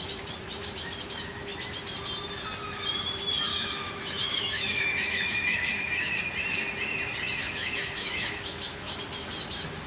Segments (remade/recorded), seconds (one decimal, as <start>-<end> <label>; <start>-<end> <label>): 0.0-3.5 recorded; 3.5-6.2 remade; 6.2-7.4 recorded; 7.4-9.0 remade; 9.0-9.9 recorded